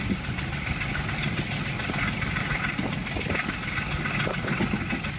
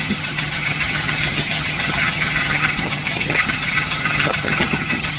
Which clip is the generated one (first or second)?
second